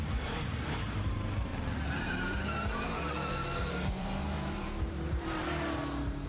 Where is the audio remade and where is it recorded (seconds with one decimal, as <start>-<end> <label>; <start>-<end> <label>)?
0.0-1.5 remade; 1.5-3.7 recorded; 3.7-5.4 remade; 5.4-6.3 recorded